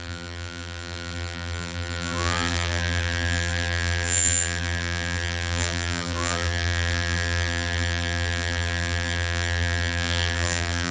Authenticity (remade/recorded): remade